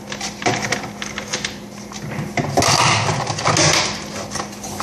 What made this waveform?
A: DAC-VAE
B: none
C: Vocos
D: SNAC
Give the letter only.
B